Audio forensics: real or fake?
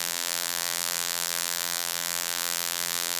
fake